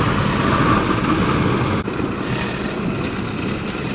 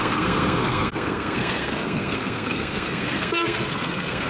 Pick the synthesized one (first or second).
second